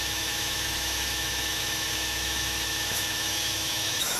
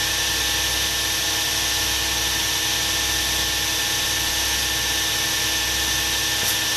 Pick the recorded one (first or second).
second